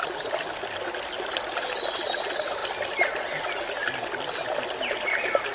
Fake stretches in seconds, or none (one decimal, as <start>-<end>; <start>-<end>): none